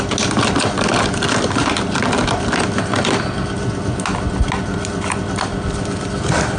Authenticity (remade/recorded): recorded